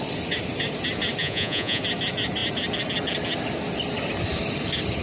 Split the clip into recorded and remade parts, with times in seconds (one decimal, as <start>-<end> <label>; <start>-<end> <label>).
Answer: 0.0-1.2 recorded; 1.2-1.8 remade; 1.8-5.0 recorded